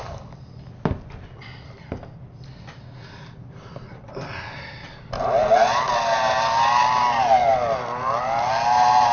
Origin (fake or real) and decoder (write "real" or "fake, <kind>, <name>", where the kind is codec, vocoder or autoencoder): real